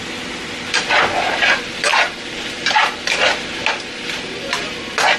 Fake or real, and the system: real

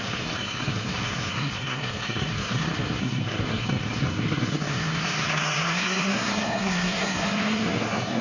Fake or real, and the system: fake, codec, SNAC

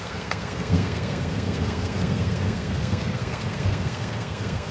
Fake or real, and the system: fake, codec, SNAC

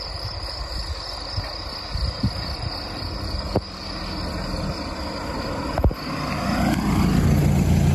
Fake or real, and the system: real